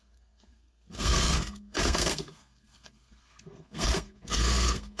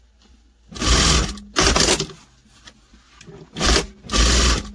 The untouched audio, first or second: second